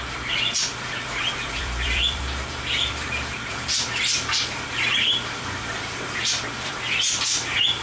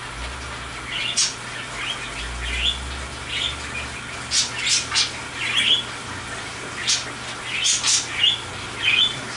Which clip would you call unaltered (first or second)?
second